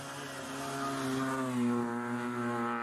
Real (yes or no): yes